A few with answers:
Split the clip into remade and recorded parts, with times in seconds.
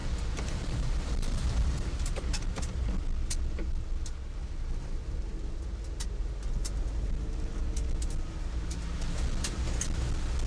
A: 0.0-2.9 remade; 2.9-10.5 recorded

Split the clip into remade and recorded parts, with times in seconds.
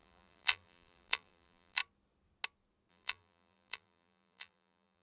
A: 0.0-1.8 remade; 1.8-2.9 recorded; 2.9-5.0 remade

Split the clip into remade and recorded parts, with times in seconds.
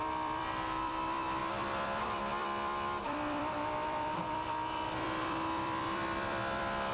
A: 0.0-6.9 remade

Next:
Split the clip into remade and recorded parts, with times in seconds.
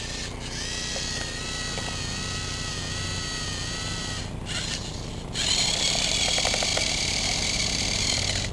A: 0.0-6.7 recorded; 6.7-8.5 remade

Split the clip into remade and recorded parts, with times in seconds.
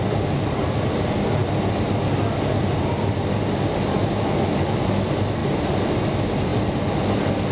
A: 0.0-7.5 recorded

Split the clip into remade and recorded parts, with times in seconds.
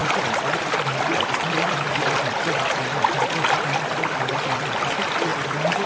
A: 0.0-2.7 remade; 2.7-5.9 recorded